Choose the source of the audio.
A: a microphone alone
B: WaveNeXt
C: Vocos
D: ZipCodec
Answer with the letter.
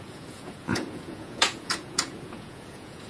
C